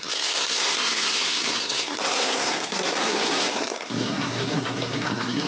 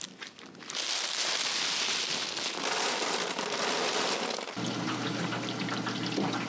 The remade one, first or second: first